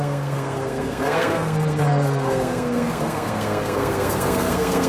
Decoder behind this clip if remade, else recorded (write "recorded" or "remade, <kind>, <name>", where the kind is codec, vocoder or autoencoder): remade, codec, SNAC